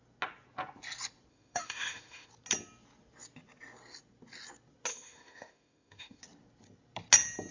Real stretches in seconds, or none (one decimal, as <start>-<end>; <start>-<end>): 0.0-1.3; 2.3-4.9; 6.2-7.5